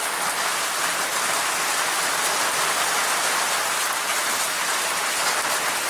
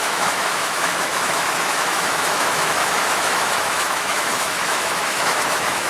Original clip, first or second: first